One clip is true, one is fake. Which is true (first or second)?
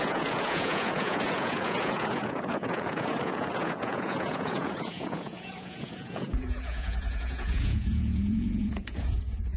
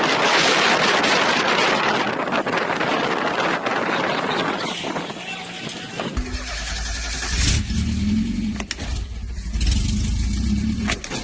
second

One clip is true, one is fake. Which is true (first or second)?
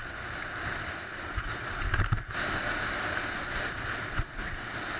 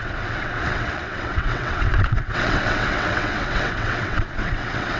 first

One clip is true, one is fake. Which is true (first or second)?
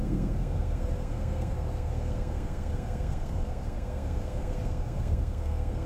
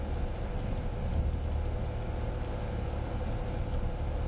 second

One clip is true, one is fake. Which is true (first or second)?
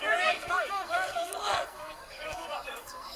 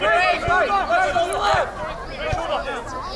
second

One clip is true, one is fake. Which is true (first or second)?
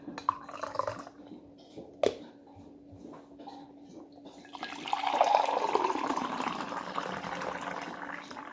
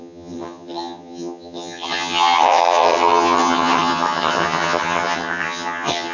first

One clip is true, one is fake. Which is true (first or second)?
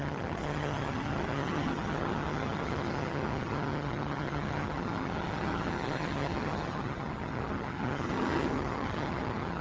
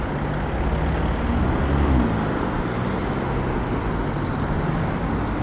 second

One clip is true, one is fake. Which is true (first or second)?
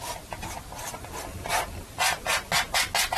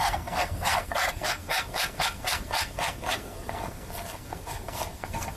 first